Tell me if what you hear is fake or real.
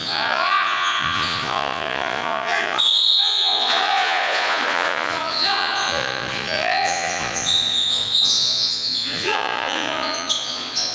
fake